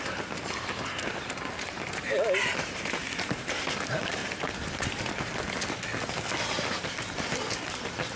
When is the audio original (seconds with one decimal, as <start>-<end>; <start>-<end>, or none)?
0.0-2.5; 3.4-8.2